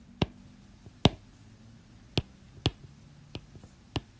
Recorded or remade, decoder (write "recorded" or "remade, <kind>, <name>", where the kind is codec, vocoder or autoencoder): recorded